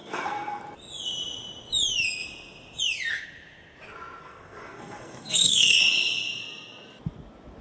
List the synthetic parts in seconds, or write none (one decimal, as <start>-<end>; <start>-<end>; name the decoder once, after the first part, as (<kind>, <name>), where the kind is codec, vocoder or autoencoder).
0.0-0.6 (codec, SNAC); 4.2-5.8